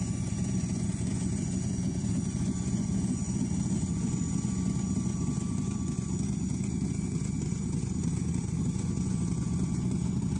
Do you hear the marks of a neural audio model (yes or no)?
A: yes